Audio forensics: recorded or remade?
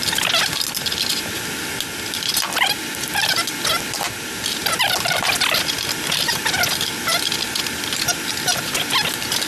recorded